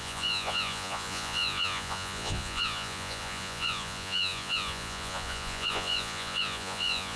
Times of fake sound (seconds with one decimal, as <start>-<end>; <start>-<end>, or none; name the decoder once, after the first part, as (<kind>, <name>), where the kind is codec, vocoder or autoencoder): 0.0-7.2 (vocoder, Vocos)